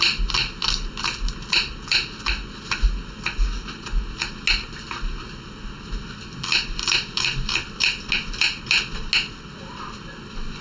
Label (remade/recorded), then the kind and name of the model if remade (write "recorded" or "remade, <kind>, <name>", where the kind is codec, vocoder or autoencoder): recorded